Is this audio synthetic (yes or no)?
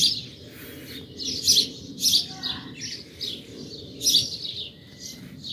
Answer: no